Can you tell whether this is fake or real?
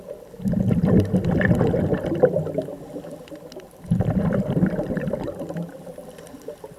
real